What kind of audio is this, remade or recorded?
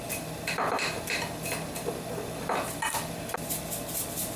recorded